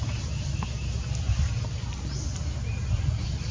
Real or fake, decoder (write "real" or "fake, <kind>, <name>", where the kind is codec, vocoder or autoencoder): real